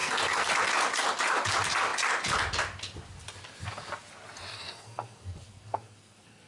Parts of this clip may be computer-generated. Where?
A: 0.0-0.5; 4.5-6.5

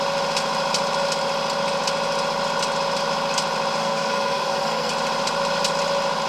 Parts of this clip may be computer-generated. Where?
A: 3.8-4.9